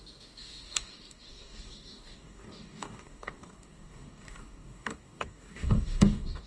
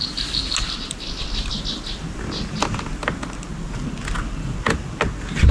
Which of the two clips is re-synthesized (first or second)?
first